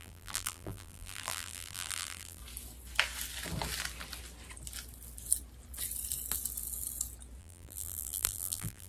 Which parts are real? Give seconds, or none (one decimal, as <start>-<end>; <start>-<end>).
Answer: 2.4-7.4